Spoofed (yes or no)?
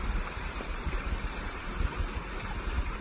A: yes